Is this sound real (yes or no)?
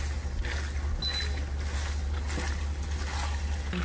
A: yes